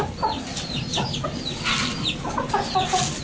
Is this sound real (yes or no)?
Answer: yes